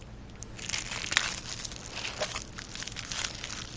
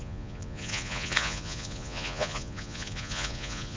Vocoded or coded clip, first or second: second